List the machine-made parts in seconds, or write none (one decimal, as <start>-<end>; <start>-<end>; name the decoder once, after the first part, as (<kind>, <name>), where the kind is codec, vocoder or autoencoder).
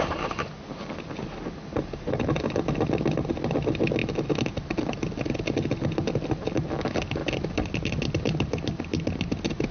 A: none